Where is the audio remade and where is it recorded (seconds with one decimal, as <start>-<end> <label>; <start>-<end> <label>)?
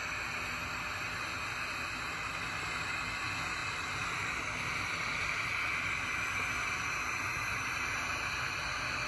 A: 0.0-3.6 recorded; 3.6-5.5 remade; 5.5-9.1 recorded